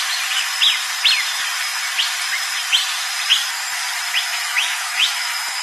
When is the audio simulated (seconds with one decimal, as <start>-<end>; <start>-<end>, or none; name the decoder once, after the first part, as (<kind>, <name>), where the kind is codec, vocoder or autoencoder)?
4.3-5.6 (autoencoder, DAC-VAE)